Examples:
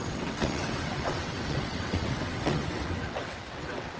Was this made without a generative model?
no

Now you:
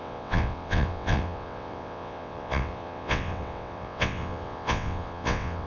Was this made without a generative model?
no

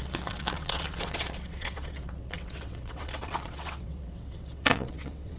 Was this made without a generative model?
no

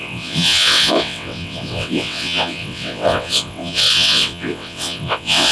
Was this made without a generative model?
no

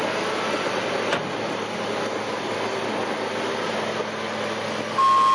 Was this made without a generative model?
yes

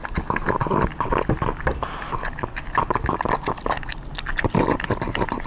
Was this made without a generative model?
yes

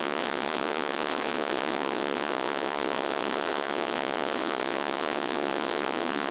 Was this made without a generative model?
no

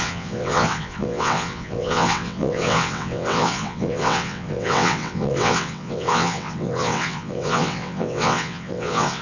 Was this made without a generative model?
no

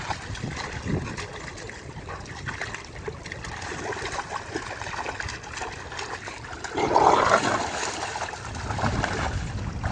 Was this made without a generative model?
yes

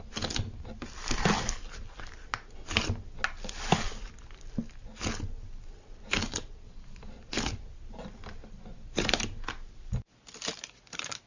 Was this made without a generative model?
yes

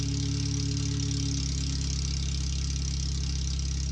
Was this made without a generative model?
yes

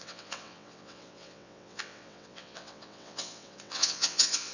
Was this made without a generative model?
no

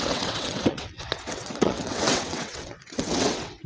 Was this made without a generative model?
no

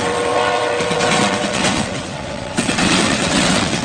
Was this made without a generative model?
no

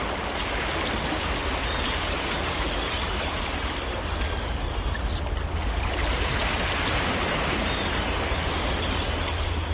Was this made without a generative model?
yes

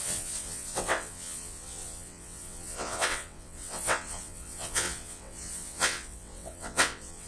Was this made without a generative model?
no